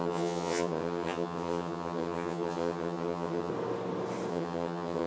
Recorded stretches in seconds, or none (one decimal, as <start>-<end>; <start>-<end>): 3.5-4.3